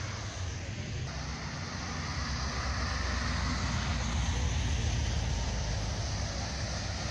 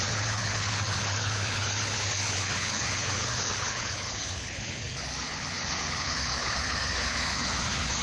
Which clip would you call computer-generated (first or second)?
second